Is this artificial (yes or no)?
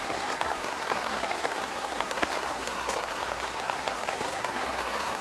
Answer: yes